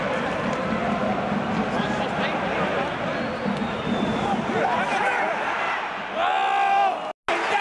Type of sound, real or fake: real